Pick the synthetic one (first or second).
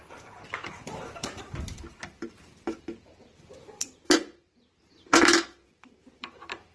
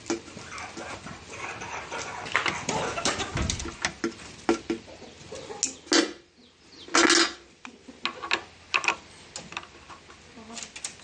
first